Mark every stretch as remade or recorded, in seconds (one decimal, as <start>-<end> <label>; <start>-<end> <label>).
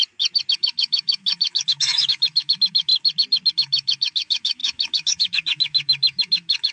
0.0-0.5 recorded; 0.5-2.9 remade; 2.9-3.5 recorded; 3.5-6.7 remade